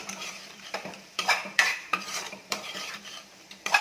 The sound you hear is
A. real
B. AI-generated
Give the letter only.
B